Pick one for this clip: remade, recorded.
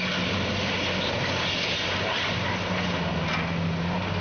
recorded